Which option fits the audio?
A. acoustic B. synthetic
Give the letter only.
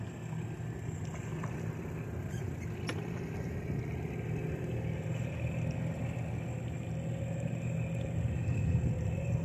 A